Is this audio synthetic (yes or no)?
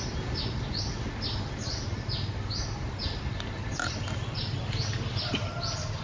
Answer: no